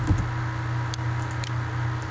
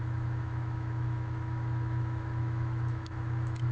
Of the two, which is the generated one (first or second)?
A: second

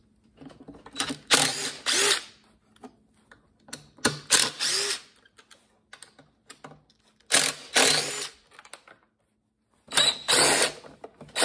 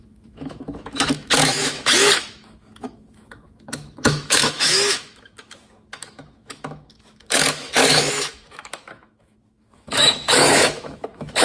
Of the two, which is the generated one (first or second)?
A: second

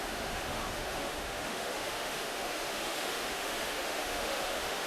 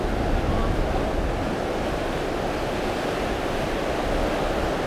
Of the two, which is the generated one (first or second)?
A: first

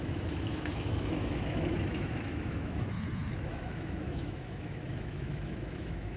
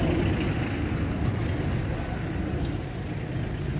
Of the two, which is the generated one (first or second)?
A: first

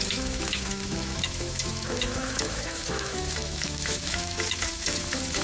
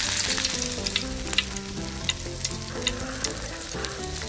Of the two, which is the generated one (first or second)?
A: first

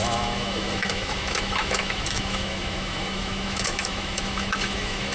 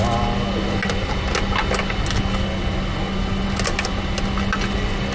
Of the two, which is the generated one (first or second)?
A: first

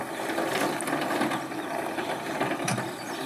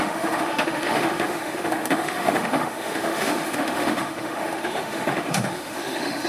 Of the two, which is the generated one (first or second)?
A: second